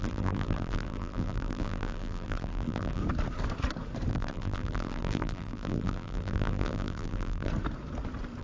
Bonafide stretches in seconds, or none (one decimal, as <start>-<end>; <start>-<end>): 3.0-4.1; 7.5-8.4